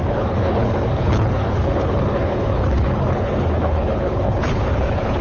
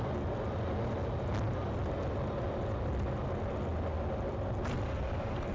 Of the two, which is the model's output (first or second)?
first